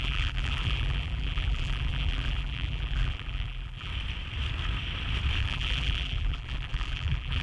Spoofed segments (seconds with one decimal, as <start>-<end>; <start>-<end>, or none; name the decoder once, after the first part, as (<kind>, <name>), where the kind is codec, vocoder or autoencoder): 0.0-3.9 (vocoder, BigVGAN v2); 5.4-7.4